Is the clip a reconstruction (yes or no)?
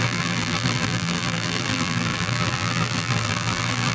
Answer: yes